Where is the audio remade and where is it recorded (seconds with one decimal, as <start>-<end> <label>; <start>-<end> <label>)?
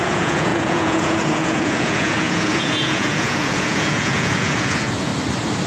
0.0-5.1 remade; 5.1-5.7 recorded